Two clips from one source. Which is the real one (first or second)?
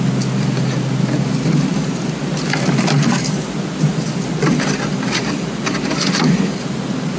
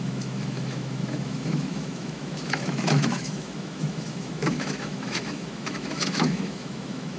first